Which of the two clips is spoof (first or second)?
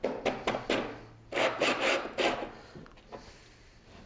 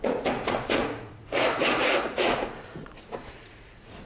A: second